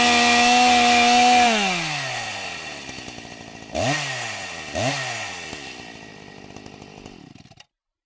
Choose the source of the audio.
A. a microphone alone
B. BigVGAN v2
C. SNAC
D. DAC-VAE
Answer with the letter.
A